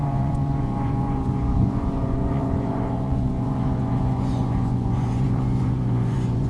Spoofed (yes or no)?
yes